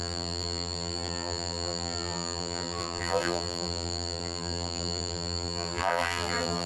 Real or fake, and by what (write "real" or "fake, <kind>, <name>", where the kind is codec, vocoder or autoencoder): fake, vocoder, BigVGAN v2